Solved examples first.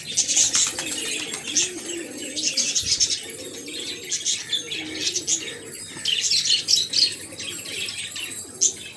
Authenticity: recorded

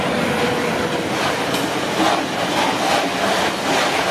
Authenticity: recorded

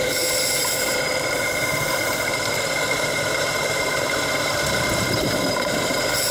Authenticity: remade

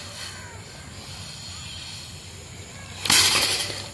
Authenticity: recorded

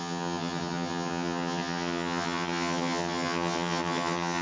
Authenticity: remade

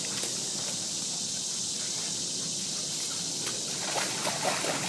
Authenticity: recorded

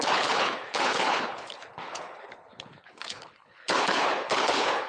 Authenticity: remade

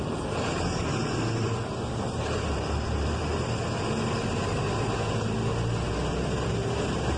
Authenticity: recorded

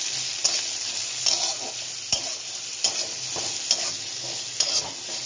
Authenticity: recorded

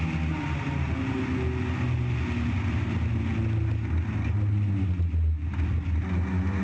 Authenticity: recorded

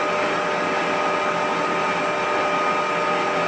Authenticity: recorded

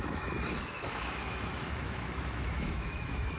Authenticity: remade